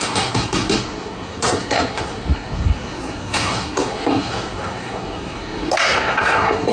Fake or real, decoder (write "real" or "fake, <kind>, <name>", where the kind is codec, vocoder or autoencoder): fake, codec, SNAC